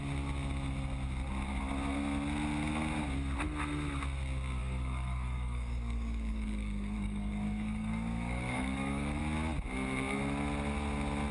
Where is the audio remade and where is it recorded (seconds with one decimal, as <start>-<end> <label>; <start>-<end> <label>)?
0.0-4.6 recorded; 4.6-9.2 remade; 9.2-11.3 recorded